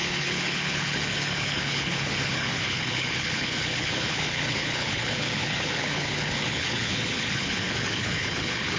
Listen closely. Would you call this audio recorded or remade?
remade